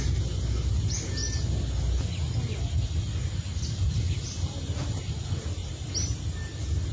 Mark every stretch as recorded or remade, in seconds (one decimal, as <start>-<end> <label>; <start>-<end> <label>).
0.0-3.8 recorded; 3.8-4.3 remade; 4.3-6.9 recorded